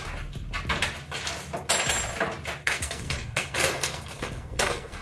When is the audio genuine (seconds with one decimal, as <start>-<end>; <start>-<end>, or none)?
0.0-2.6